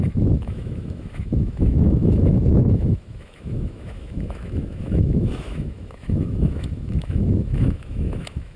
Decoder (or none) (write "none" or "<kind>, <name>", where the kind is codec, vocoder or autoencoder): autoencoder, DAC-VAE